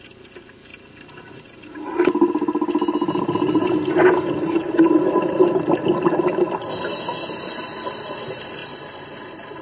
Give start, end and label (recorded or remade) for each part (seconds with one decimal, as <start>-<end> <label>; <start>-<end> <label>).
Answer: 0.0-8.6 recorded; 8.6-9.6 remade